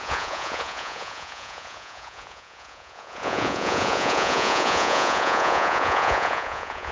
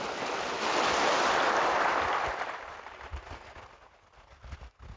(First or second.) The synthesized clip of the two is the first